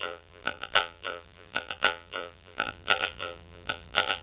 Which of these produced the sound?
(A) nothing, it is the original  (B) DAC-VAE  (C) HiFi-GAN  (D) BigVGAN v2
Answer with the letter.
D